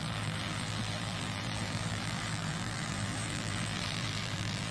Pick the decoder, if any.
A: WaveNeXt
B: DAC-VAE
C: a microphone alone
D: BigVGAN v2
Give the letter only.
D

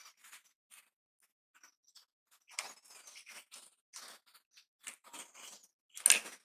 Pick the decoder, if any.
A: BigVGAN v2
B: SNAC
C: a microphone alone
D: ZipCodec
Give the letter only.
C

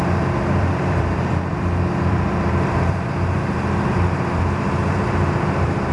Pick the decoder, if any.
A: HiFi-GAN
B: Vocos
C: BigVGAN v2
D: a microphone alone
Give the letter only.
C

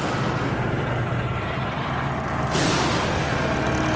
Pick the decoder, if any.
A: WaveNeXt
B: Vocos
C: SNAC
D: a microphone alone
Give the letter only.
D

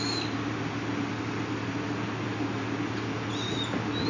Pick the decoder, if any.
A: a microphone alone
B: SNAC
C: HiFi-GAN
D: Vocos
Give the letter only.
A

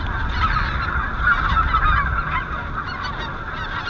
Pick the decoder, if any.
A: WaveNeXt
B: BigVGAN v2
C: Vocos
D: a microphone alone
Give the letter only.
D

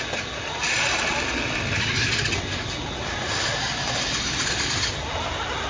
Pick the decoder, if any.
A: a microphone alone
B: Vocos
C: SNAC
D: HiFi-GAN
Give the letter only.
A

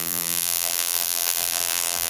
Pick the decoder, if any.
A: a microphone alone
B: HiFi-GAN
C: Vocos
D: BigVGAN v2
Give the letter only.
D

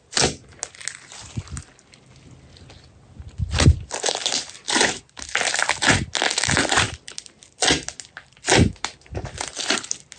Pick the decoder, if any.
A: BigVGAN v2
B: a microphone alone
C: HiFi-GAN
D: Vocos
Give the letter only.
B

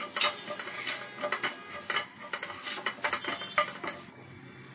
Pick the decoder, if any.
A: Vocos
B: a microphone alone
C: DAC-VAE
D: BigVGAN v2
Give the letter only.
B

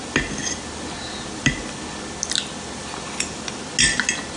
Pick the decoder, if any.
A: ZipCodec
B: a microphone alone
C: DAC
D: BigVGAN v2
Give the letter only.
B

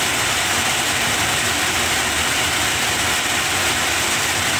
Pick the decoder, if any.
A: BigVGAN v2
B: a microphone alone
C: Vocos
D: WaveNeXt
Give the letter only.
A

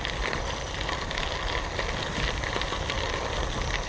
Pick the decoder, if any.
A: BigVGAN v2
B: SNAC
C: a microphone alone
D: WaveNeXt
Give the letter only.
C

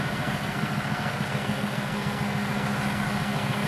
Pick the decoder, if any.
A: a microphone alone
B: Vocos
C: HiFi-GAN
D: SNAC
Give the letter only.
D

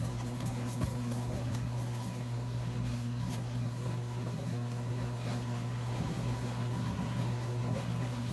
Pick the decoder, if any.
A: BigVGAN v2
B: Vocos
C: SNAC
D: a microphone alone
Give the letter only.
C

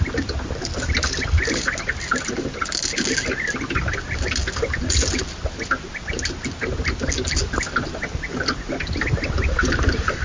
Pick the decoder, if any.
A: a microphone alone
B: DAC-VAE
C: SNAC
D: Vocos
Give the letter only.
A